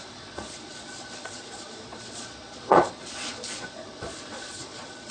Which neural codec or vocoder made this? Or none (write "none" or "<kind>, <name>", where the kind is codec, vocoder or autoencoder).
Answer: vocoder, Vocos